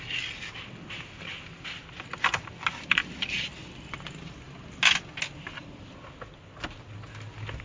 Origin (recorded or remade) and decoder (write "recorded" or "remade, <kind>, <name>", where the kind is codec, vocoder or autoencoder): recorded